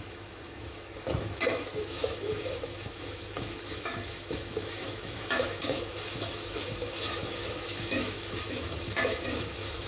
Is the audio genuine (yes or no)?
no